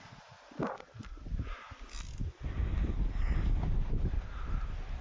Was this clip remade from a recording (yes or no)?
no